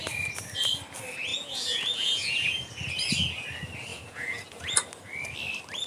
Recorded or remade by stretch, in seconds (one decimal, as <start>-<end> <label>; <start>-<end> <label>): 0.0-1.3 recorded; 1.3-2.7 remade; 2.7-3.9 recorded; 3.9-4.7 remade; 4.7-5.9 recorded